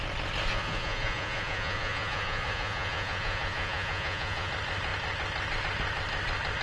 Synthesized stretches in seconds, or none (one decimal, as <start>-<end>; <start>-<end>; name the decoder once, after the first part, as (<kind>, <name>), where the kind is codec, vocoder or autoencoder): 0.5-4.5 (vocoder, Vocos)